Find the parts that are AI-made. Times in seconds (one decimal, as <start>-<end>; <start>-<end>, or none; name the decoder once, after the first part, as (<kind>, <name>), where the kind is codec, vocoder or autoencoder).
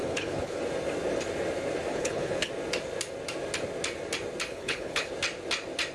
0.0-0.6 (codec, HILCodec); 1.9-2.5; 4.5-5.1